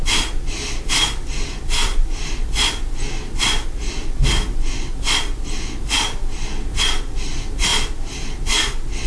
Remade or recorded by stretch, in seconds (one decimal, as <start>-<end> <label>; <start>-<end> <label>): 0.0-9.1 recorded